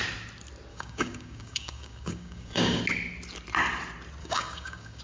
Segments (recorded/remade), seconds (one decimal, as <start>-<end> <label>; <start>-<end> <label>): 0.0-0.7 recorded; 0.7-2.8 remade; 2.8-4.2 recorded; 4.2-5.0 remade